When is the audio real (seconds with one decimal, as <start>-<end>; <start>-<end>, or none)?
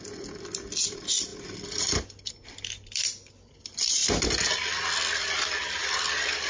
0.0-5.8